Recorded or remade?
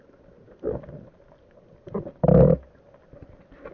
recorded